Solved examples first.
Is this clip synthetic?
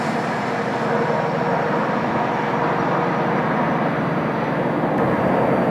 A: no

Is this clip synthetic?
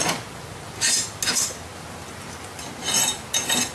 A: no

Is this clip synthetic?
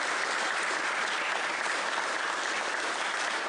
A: yes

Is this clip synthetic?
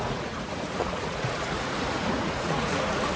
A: yes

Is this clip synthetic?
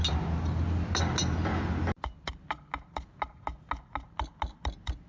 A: no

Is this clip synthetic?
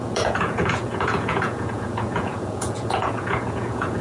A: yes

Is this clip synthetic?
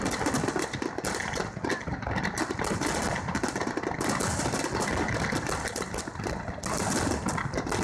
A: no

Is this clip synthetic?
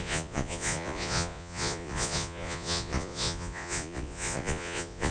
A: yes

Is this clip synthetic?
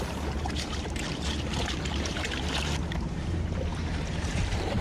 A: yes